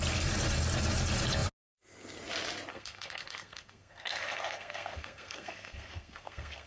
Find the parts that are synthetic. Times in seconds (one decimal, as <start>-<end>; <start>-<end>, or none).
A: 2.7-6.7